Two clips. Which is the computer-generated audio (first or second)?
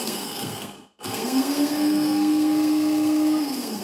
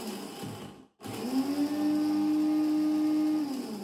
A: first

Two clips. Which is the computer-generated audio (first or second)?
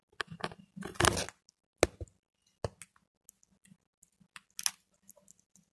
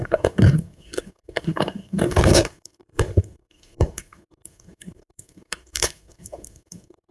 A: second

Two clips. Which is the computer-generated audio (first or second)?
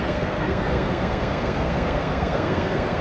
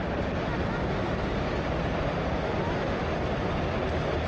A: first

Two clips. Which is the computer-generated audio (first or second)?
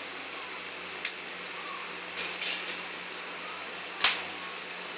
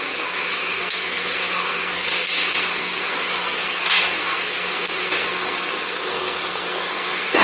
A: second